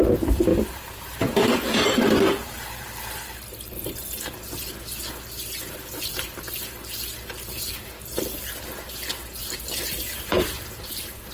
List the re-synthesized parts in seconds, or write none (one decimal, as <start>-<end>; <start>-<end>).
0.5-3.0; 9.4-11.3